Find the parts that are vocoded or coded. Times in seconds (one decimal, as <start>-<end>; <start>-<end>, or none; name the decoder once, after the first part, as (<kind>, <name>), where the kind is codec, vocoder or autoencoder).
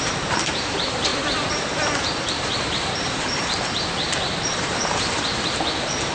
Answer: 0.0-6.1 (vocoder, BigVGAN v2)